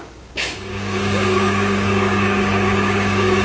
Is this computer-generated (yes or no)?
yes